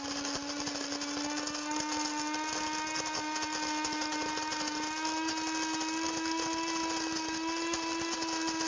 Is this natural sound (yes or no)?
yes